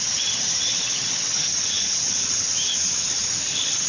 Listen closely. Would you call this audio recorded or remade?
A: remade